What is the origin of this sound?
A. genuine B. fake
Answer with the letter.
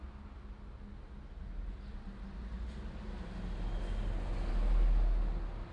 A